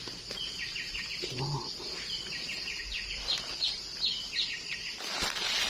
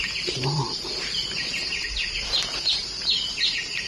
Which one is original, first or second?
first